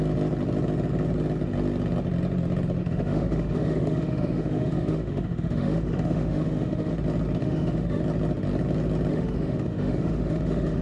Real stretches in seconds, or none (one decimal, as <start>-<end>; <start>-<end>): 0.0-2.8; 6.9-7.4; 8.0-9.1